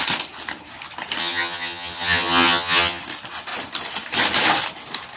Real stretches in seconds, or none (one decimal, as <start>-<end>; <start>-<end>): 0.0-1.2; 3.0-5.2